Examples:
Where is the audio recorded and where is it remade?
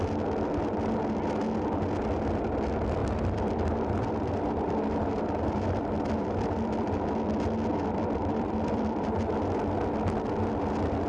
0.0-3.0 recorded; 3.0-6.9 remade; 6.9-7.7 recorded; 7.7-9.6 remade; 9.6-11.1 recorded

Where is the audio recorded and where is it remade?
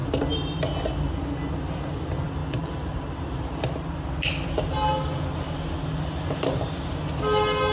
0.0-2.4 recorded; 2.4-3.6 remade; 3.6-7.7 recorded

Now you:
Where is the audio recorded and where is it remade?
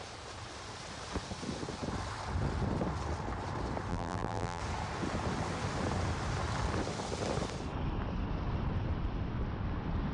0.0-3.9 recorded; 3.9-4.6 remade; 4.6-10.1 recorded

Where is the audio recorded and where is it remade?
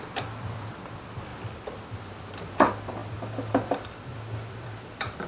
0.0-1.3 remade; 1.3-2.2 recorded; 2.2-3.0 remade; 3.0-3.5 recorded; 3.5-5.3 remade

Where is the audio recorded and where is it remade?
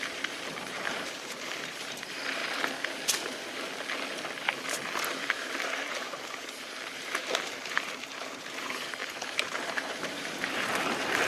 0.0-2.4 remade; 2.4-5.2 recorded; 5.2-11.3 remade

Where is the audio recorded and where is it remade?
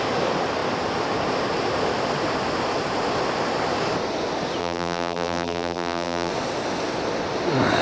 0.0-4.6 recorded; 4.6-6.3 remade; 6.3-7.8 recorded